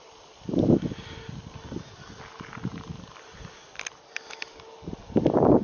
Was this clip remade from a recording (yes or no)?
no